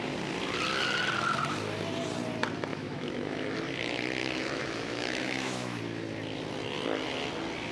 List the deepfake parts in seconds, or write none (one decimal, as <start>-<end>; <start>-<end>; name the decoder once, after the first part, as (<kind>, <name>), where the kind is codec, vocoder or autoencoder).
2.7-3.5 (autoencoder, DAC-VAE); 4.2-5.8